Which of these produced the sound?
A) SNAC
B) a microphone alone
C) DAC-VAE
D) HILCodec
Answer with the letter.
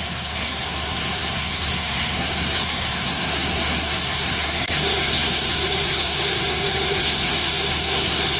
A